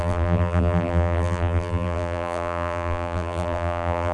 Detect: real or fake fake